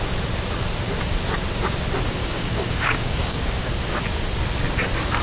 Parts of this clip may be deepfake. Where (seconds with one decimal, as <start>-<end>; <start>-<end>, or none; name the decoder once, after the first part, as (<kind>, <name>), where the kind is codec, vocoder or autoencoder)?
2.2-3.7 (codec, DAC)